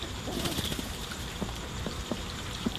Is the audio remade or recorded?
remade